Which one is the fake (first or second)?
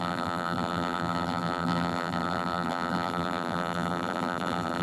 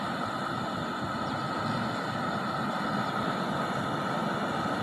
first